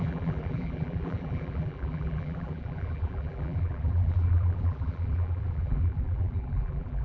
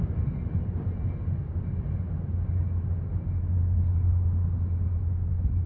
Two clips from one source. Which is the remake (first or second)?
first